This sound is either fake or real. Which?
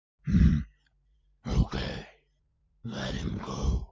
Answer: fake